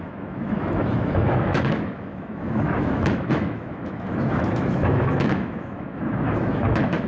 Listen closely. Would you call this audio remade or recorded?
remade